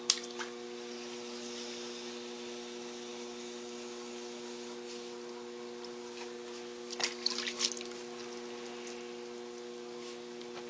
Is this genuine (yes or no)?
yes